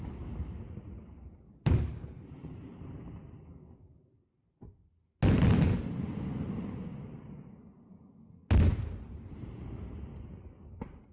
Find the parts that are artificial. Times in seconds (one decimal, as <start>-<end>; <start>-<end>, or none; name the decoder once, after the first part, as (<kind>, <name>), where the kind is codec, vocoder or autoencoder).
1.9-2.8 (vocoder, BigVGAN v2)